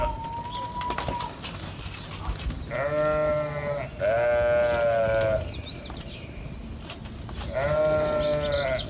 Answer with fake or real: real